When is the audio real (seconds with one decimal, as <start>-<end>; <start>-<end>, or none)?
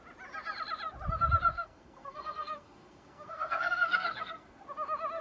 0.0-1.5; 4.6-5.2